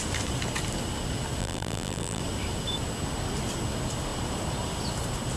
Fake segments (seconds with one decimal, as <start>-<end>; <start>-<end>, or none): 1.4-2.2